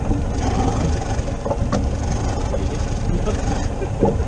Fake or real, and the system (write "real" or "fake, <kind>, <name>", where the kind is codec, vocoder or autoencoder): real